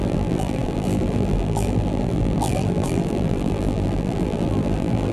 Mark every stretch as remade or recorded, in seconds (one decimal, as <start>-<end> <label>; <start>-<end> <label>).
0.0-5.1 remade